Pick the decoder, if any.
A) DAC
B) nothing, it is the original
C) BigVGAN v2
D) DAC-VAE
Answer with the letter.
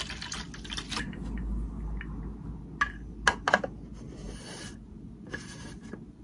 B